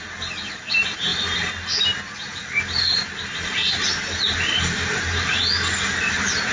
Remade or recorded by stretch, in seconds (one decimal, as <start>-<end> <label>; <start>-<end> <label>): 0.0-6.5 recorded